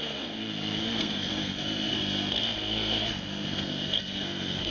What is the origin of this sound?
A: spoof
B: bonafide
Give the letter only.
A